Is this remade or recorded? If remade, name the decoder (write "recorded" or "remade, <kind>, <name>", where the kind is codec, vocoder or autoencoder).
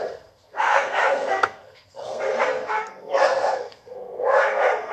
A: remade, codec, SNAC